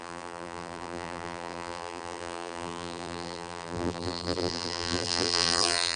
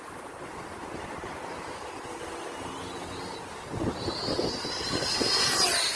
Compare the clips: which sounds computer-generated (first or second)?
first